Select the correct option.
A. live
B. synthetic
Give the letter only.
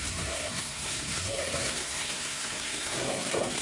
B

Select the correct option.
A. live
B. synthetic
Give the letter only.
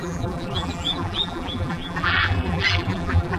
B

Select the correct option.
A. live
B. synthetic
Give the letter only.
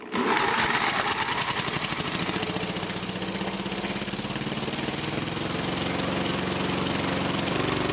A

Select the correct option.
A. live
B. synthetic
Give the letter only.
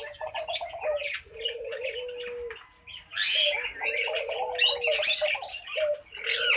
A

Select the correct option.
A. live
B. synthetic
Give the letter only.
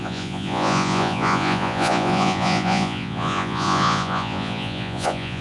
B